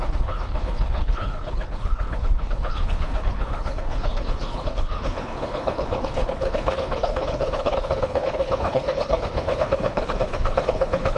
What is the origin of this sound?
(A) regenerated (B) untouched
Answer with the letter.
A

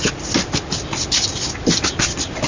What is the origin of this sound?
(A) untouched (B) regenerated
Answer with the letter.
A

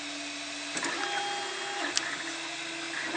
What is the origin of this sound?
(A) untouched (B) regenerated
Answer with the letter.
A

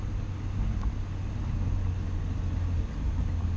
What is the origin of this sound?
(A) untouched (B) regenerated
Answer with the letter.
A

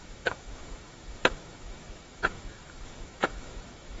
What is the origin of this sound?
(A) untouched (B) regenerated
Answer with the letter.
B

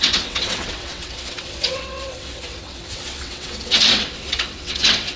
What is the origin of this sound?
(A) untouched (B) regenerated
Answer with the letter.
B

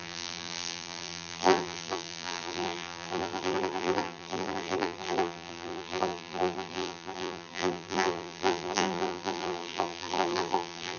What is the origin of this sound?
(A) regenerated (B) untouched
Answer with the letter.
A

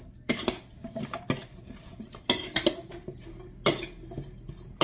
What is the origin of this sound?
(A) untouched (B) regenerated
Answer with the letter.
A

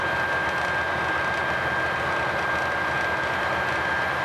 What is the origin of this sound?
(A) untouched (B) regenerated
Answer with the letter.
A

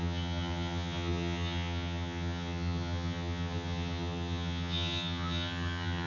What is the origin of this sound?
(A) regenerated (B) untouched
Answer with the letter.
A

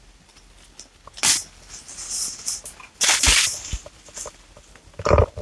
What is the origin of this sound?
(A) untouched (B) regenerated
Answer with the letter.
A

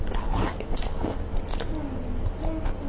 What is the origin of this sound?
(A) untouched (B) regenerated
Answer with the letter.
A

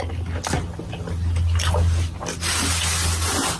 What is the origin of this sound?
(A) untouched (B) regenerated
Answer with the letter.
A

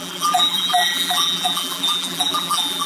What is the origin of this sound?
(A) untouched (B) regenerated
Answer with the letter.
B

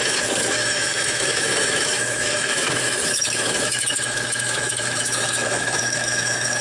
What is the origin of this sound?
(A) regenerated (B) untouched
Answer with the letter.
A